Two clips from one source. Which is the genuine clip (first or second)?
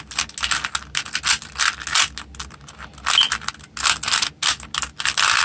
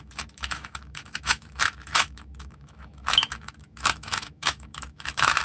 first